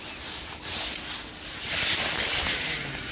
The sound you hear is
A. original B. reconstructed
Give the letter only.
A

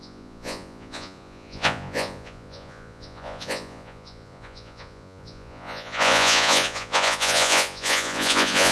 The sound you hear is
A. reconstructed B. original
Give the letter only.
A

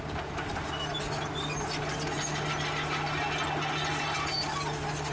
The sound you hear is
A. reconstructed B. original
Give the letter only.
B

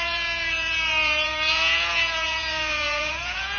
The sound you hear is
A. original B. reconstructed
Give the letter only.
B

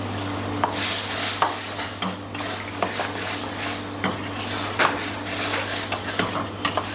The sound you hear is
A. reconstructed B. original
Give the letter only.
B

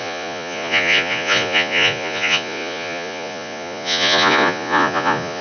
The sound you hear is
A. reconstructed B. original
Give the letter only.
A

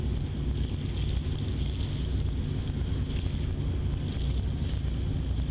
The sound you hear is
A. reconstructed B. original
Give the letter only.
B